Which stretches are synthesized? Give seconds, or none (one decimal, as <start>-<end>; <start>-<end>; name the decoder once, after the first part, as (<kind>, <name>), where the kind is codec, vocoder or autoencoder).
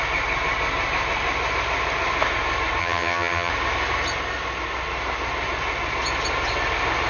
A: 2.8-3.5 (vocoder, HiFi-GAN)